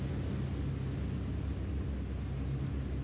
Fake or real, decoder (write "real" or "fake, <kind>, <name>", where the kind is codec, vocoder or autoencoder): real